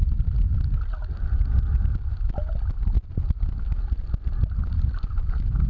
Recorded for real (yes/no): yes